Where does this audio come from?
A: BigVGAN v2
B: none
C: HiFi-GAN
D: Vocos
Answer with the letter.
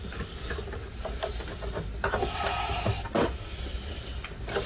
B